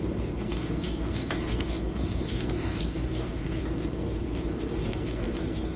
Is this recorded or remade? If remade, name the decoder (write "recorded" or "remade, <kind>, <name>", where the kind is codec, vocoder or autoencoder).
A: remade, codec, SNAC